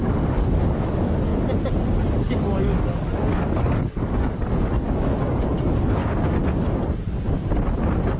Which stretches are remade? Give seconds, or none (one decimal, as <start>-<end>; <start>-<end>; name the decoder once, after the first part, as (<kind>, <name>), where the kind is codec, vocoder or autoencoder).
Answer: 0.0-1.3 (codec, DAC); 2.1-6.0